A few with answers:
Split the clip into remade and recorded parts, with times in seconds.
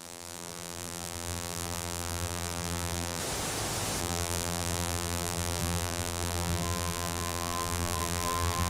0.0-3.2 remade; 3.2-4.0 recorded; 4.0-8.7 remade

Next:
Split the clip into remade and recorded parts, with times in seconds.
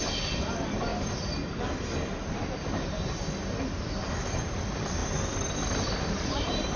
0.0-5.0 remade; 5.0-5.9 recorded; 5.9-6.8 remade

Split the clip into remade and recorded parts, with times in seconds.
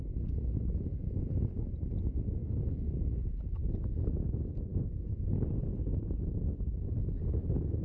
0.0-7.8 recorded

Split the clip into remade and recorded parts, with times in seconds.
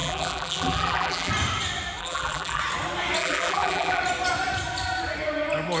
0.0-1.3 remade; 1.3-2.0 recorded; 2.0-2.6 remade; 2.6-3.2 recorded; 3.2-4.0 remade; 4.0-5.8 recorded